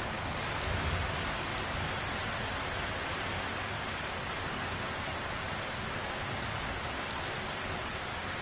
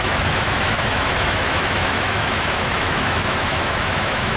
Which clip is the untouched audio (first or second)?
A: first